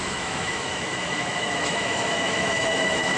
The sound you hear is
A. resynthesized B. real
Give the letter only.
A